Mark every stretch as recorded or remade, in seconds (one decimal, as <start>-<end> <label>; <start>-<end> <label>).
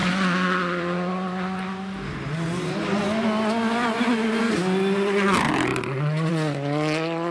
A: 0.0-7.3 recorded